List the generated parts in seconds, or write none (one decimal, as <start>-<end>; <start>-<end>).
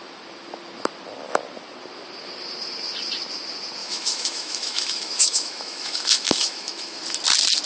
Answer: 3.8-7.0